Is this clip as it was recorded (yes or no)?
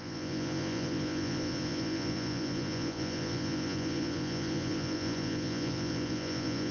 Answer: no